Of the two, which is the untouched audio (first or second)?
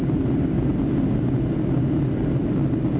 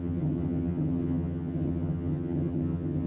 first